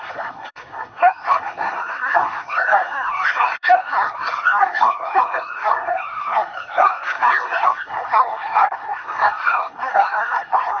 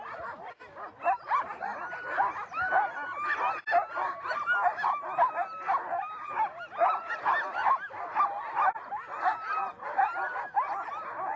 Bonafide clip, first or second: second